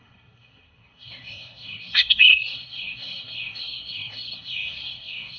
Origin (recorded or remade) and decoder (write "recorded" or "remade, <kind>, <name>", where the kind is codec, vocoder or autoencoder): remade, codec, SNAC